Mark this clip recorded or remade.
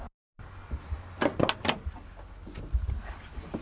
recorded